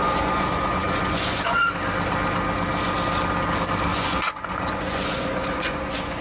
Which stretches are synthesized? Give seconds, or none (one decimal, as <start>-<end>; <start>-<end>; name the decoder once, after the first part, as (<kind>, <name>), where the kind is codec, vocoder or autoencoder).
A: 0.0-1.7 (vocoder, Vocos); 3.9-6.2